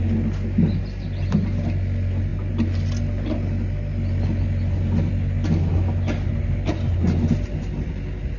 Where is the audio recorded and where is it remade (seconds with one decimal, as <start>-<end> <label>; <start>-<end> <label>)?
0.0-8.4 recorded